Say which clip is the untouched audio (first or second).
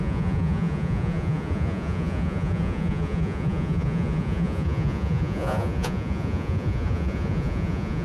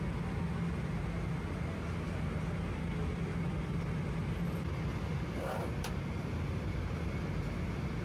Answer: second